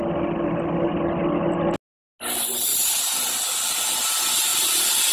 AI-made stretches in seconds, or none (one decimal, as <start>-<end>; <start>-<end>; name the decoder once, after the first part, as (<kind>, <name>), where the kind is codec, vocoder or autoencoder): 2.7-4.0 (vocoder, BigVGAN v2); 4.5-5.1